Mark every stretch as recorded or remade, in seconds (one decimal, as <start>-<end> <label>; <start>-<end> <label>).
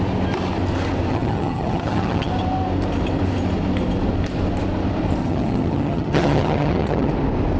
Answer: 0.0-1.1 recorded; 1.1-2.3 remade; 2.3-5.2 recorded; 5.2-7.1 remade; 7.1-7.6 recorded